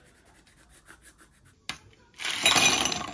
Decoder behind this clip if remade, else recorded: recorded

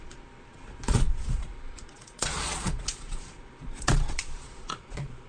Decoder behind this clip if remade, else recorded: remade, vocoder, Vocos